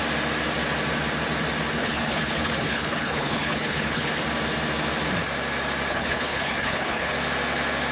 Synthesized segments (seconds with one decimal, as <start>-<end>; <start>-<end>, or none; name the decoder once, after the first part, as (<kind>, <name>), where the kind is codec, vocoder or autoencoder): 1.8-4.2 (codec, HILCodec); 5.9-7.1